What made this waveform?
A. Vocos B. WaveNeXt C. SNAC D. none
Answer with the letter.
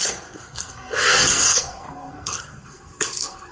C